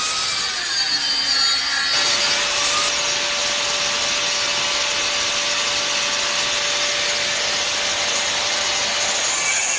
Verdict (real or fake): real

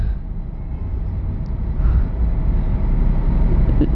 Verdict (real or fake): real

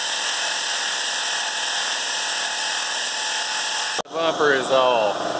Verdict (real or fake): real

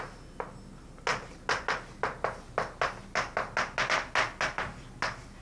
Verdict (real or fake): real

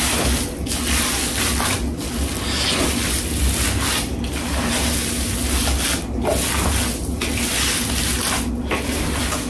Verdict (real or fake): real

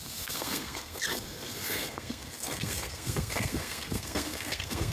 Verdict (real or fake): fake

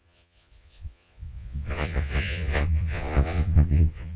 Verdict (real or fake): fake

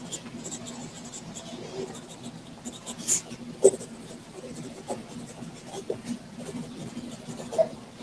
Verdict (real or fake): real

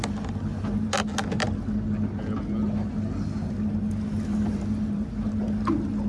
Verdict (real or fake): real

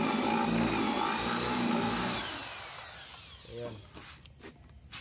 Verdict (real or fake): real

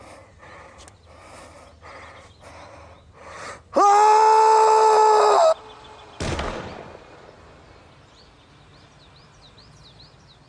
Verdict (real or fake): real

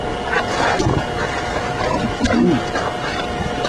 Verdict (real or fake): real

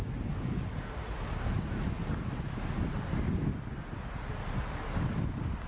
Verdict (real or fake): real